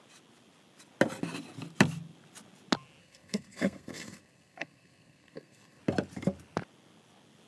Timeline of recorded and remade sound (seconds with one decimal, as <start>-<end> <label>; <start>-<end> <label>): 0.0-3.0 recorded; 3.0-5.8 remade; 5.8-7.5 recorded

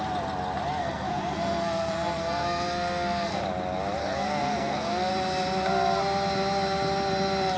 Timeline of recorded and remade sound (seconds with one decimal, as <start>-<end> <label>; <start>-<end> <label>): 0.0-0.8 recorded; 0.8-3.4 remade; 3.4-4.0 recorded; 4.0-5.1 remade; 5.1-7.6 recorded

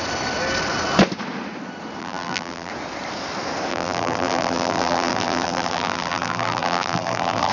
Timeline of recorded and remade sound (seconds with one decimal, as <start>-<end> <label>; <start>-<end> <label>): 0.0-2.0 recorded; 2.0-2.7 remade; 2.7-3.7 recorded; 3.7-7.5 remade

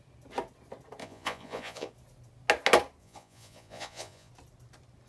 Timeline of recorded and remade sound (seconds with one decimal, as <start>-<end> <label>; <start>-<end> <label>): 0.0-1.0 recorded; 1.0-1.9 remade; 1.9-3.0 recorded; 3.0-4.3 remade; 4.3-5.1 recorded

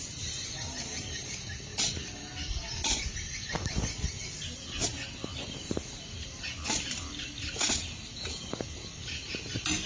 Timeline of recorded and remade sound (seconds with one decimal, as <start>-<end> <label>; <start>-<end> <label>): 0.0-9.9 recorded

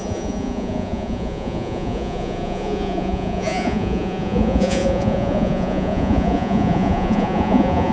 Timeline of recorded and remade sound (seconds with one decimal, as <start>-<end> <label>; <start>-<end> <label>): 0.0-7.9 remade

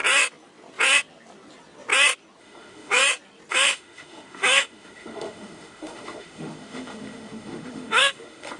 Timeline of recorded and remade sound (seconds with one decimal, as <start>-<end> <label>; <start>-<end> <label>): 0.0-2.4 recorded; 2.4-3.0 remade; 3.0-3.5 recorded; 3.5-8.6 remade